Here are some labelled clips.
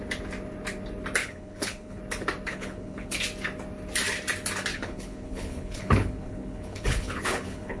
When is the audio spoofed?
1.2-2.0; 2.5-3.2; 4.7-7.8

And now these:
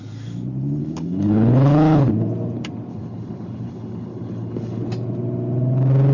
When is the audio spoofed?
0.8-2.1; 2.9-4.8